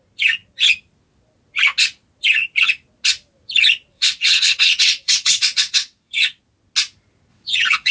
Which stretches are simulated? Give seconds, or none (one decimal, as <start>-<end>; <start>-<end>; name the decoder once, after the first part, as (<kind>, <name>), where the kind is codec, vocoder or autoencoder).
3.9-6.4 (vocoder, WaveNeXt); 7.3-7.9